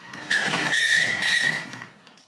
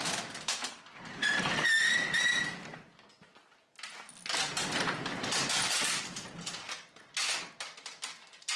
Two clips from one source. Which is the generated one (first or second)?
first